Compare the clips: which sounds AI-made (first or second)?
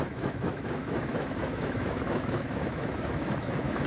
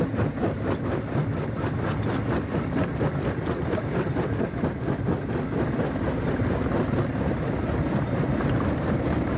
first